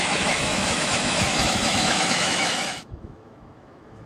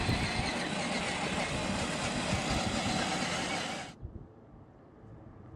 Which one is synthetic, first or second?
first